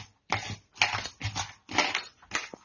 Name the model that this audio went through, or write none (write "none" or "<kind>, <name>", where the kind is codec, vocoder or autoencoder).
none